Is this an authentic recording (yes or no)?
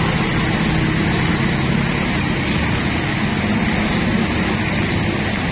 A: yes